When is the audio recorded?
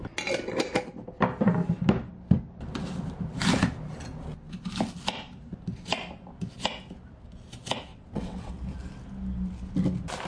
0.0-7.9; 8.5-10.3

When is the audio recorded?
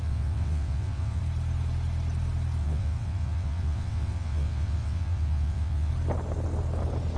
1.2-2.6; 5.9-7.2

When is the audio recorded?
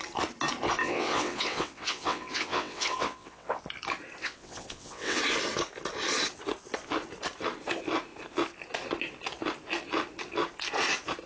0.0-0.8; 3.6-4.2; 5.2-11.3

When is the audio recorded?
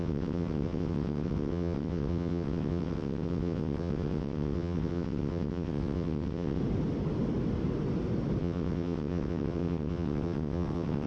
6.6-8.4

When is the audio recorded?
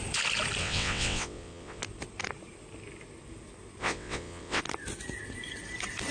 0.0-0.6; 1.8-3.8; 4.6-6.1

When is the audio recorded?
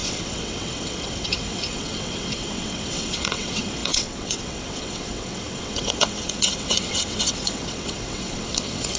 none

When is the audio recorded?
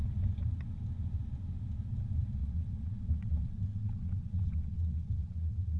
0.0-2.4